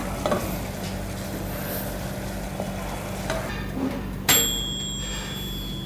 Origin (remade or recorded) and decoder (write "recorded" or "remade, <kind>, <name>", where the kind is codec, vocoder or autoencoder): recorded